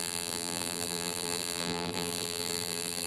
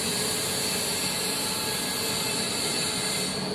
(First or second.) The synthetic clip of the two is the first